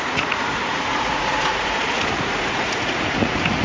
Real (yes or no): no